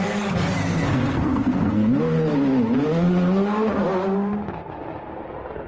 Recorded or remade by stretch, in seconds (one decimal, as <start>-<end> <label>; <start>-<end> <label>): 0.0-0.6 recorded; 0.6-2.0 remade; 2.0-5.7 recorded

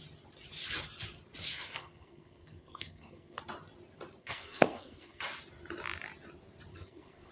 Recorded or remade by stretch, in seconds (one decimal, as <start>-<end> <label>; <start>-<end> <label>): 0.0-1.4 recorded; 1.4-3.4 remade; 3.4-4.2 recorded; 4.2-5.2 remade; 5.2-6.7 recorded; 6.7-7.3 remade

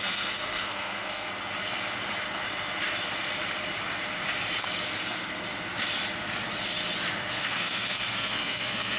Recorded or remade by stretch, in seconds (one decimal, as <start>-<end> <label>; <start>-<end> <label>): 0.0-1.3 remade; 1.3-5.0 recorded; 5.0-5.4 remade; 5.4-7.3 recorded; 7.3-9.0 remade

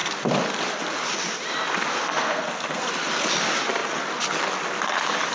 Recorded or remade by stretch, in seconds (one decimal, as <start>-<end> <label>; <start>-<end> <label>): 0.0-2.1 recorded; 2.1-2.8 remade; 2.8-5.3 recorded

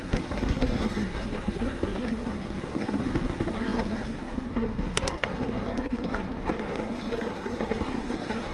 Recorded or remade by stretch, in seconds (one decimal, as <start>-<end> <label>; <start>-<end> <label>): 0.0-8.5 remade

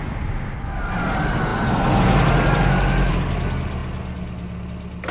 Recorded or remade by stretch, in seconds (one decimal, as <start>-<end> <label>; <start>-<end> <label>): 0.0-5.1 recorded

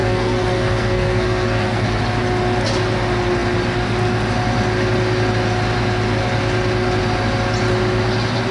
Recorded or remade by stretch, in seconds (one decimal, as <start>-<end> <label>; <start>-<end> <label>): 0.0-2.0 remade; 2.0-8.5 recorded

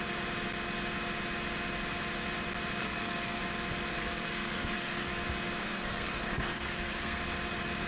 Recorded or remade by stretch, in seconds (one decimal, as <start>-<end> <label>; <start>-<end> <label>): 0.0-2.8 recorded; 2.8-3.4 remade; 3.4-3.9 recorded; 3.9-5.1 remade; 5.1-5.6 recorded; 5.6-7.2 remade; 7.2-7.9 recorded